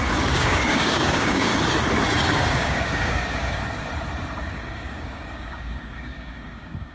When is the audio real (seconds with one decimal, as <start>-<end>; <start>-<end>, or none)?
1.5-2.5; 3.6-4.4